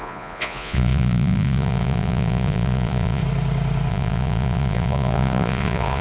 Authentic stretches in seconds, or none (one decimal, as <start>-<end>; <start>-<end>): 3.2-3.9